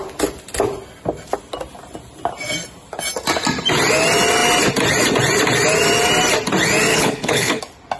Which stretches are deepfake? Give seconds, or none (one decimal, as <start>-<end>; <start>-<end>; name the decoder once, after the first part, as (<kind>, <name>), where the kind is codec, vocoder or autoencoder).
6.9-7.6 (codec, HILCodec)